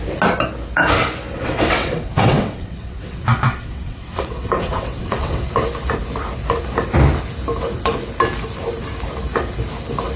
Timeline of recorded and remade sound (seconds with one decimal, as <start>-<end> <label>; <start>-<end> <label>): 0.0-1.3 recorded; 1.3-5.5 remade; 5.5-10.2 recorded